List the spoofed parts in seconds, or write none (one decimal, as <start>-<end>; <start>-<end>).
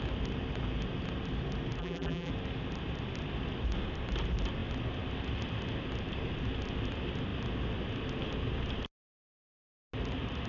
1.8-2.3